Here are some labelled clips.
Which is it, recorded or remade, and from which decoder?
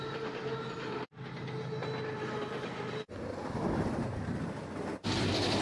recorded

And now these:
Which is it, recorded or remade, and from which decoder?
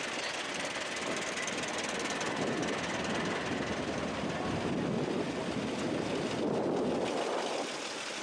recorded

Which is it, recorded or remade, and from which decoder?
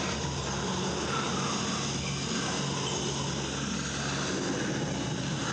recorded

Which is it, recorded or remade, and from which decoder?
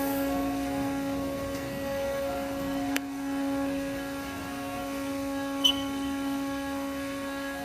remade, codec, SNAC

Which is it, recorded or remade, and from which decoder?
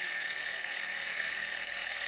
remade, codec, SNAC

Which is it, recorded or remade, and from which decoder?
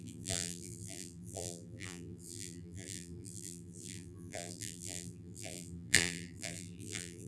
remade, vocoder, BigVGAN v2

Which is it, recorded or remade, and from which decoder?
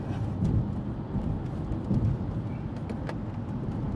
recorded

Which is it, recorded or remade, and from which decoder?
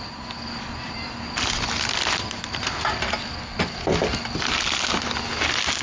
recorded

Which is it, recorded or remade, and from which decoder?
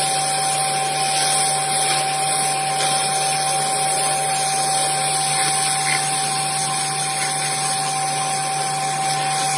recorded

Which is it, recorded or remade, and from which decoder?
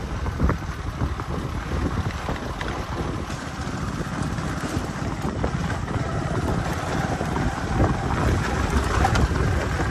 recorded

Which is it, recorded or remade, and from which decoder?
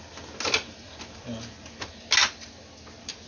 recorded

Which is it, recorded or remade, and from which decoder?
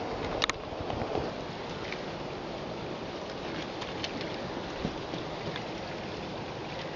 recorded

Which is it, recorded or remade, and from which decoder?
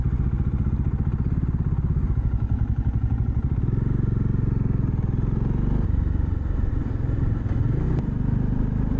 recorded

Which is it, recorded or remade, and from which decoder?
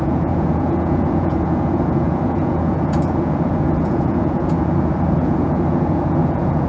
remade, vocoder, Vocos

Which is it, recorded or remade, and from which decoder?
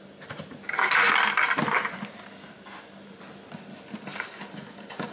recorded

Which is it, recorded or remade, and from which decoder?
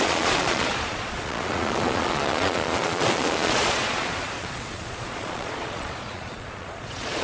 remade, vocoder, Vocos